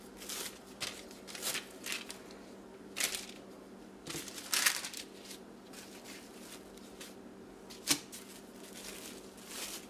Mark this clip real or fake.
real